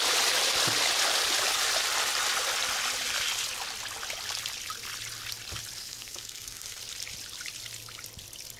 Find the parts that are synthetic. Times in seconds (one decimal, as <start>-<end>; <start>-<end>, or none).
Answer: 5.8-6.8